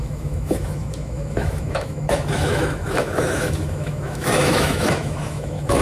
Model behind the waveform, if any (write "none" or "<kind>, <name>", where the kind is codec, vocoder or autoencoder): autoencoder, DAC-VAE